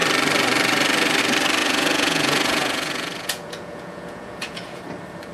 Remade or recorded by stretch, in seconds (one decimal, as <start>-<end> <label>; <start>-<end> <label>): 0.0-1.6 recorded; 1.6-4.8 remade; 4.8-5.3 recorded

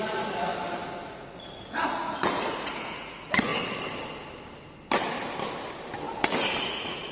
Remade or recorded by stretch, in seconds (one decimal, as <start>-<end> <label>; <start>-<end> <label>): 0.0-0.5 remade; 0.5-1.1 recorded; 1.1-3.5 remade; 3.5-6.6 recorded; 6.6-7.1 remade